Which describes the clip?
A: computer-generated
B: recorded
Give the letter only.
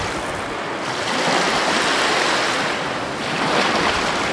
B